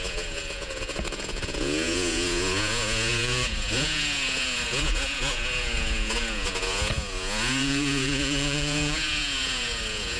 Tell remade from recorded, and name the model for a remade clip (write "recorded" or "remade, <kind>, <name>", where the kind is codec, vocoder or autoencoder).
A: remade, vocoder, Vocos